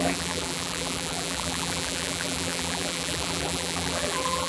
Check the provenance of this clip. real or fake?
fake